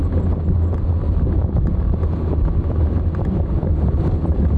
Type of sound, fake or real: real